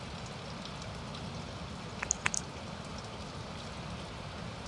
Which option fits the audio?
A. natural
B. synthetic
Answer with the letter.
A